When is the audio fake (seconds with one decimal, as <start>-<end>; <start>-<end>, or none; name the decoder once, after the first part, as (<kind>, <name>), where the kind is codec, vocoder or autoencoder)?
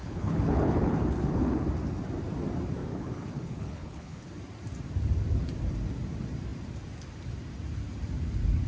0.0-1.7 (codec, HILCodec); 2.8-4.3